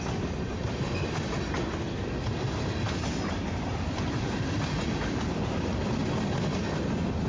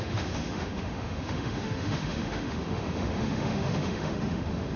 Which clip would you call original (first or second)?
first